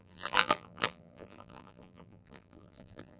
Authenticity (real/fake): fake